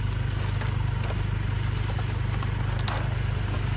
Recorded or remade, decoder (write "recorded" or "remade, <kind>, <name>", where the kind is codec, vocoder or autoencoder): recorded